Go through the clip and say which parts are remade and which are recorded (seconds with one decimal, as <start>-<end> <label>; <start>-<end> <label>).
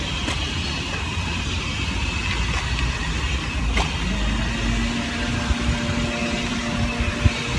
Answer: 0.0-6.2 recorded; 6.2-6.8 remade; 6.8-7.6 recorded